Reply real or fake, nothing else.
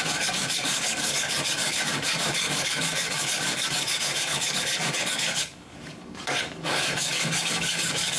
fake